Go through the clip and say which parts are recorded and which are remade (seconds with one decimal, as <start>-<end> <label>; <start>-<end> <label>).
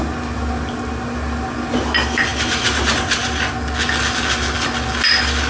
0.0-5.5 recorded